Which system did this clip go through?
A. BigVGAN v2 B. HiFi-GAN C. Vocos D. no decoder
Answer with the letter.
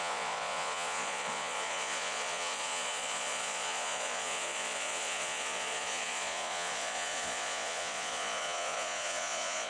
C